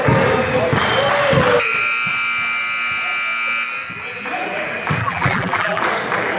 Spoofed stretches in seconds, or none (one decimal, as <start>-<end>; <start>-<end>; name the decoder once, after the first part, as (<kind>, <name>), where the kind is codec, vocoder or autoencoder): 5.0-5.8 (vocoder, BigVGAN v2)

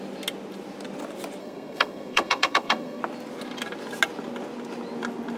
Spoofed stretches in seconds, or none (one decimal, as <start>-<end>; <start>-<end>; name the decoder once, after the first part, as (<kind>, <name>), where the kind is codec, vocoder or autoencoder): 1.4-3.0 (codec, SNAC)

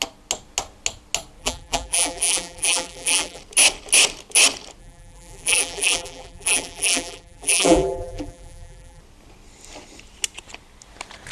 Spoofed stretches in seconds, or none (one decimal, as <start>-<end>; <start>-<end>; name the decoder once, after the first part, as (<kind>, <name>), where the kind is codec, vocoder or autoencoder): 1.4-3.4 (vocoder, BigVGAN v2); 4.8-9.0

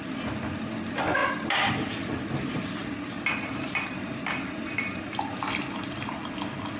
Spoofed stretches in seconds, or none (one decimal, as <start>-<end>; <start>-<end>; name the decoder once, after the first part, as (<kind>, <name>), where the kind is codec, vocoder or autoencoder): none

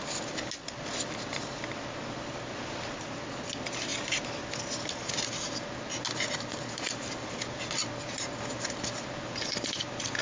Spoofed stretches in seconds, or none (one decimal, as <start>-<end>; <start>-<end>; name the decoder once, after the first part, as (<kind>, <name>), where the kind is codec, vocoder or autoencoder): none

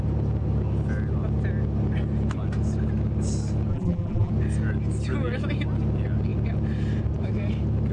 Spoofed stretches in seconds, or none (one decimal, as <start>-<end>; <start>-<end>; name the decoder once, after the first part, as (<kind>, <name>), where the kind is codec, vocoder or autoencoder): 3.7-4.3 (vocoder, BigVGAN v2)

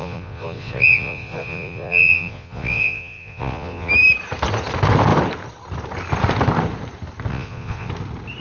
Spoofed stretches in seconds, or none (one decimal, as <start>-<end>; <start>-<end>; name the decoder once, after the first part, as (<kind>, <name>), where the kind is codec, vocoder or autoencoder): 0.0-3.9 (vocoder, Vocos); 7.3-7.9

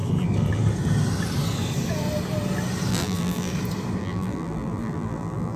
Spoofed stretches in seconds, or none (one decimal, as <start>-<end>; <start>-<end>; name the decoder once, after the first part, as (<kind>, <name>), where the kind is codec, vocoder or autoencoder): 2.9-3.5 (vocoder, BigVGAN v2); 4.0-5.6